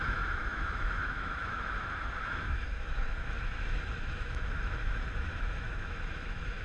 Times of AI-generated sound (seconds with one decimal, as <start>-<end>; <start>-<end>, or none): 0.0-6.6